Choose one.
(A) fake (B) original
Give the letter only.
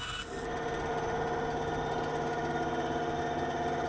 B